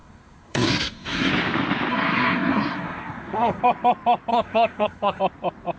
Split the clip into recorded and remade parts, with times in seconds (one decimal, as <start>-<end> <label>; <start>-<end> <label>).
0.0-1.3 remade; 1.3-1.9 recorded; 1.9-3.6 remade; 3.6-4.3 recorded; 4.3-5.2 remade; 5.2-5.8 recorded